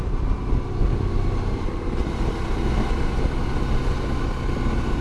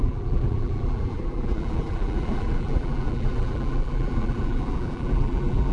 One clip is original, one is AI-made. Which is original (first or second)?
first